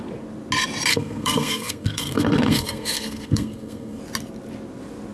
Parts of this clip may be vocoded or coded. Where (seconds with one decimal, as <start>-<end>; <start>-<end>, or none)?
0.9-4.0